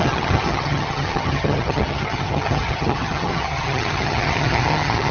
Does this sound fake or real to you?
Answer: fake